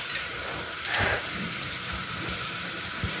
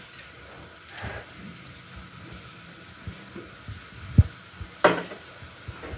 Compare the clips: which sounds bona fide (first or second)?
second